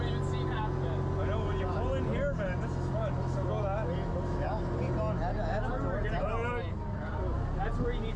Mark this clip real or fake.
real